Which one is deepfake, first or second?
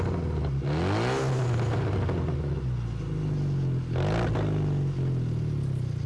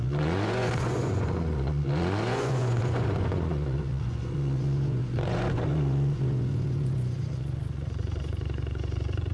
second